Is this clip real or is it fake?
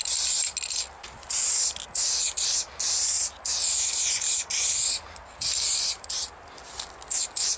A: real